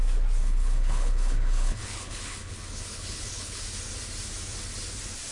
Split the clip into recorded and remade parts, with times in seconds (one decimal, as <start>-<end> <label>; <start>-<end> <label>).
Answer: 0.0-0.4 recorded; 0.4-3.6 remade; 3.6-5.3 recorded